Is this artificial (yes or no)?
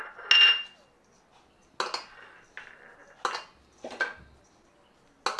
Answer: no